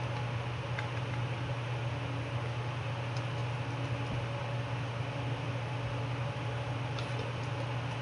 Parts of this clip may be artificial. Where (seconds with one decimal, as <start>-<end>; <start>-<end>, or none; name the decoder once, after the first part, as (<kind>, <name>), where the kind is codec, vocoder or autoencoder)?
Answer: none